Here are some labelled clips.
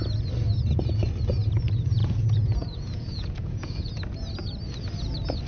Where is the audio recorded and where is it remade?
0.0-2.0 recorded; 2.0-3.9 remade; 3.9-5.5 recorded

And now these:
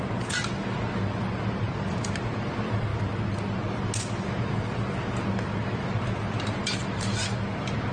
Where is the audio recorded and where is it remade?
0.0-7.9 recorded

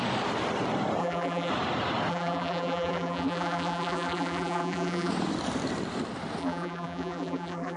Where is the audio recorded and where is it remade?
0.0-1.0 recorded; 1.0-1.5 remade; 1.5-2.1 recorded; 2.1-5.1 remade; 5.1-6.4 recorded; 6.4-7.8 remade

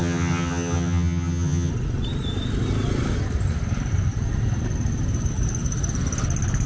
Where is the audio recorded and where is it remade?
0.0-1.7 remade; 1.7-6.7 recorded

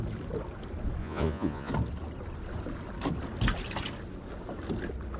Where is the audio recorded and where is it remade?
0.0-1.0 recorded; 1.0-1.7 remade; 1.7-5.2 recorded

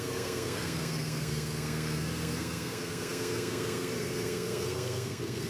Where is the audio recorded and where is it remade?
0.0-5.5 remade

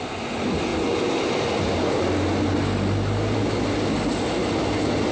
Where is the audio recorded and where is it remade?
0.0-5.1 recorded

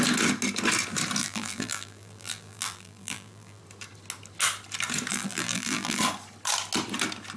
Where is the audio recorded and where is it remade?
0.0-1.2 recorded; 1.2-3.6 remade; 3.6-5.1 recorded; 5.1-6.0 remade; 6.0-7.4 recorded